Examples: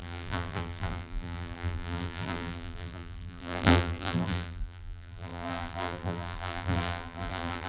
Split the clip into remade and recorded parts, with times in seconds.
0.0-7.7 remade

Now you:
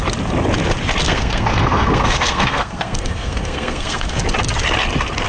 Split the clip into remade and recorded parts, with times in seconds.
0.0-1.0 recorded; 1.0-4.2 remade; 4.2-5.3 recorded